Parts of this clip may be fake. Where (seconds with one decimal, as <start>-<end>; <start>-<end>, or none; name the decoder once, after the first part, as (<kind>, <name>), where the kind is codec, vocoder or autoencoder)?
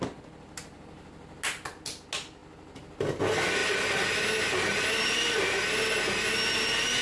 none